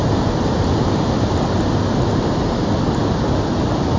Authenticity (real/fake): real